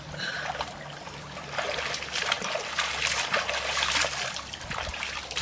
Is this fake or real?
real